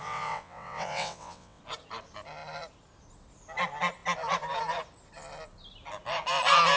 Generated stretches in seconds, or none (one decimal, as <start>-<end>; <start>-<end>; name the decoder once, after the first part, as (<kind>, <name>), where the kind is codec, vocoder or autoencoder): 0.0-1.6 (vocoder, WaveNeXt)